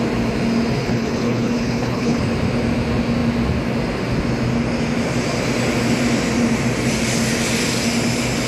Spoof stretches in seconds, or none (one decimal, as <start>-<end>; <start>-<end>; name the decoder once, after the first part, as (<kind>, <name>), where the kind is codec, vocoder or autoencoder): 0.8-2.2 (codec, HILCodec)

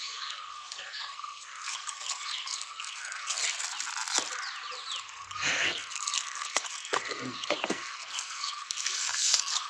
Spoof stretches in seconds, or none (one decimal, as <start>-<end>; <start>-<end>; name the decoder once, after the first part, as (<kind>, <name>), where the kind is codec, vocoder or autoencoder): 0.0-3.4 (codec, SNAC); 5.0-9.7

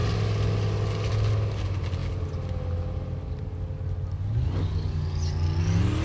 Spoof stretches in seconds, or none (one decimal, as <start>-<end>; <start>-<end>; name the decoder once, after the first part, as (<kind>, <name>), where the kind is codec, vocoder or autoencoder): none

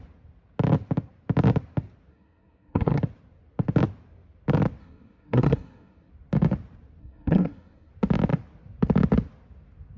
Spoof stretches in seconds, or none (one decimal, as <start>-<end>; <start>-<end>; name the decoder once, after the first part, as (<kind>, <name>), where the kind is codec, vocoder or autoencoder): 2.1-3.0 (codec, SNAC); 4.8-6.1; 7.0-7.9

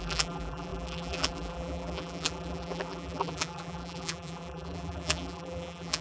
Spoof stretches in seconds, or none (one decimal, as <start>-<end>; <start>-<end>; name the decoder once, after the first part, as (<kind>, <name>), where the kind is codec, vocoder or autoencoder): 0.0-6.0 (vocoder, BigVGAN v2)